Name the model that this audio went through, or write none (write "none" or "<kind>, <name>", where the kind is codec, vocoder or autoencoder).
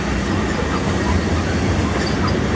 none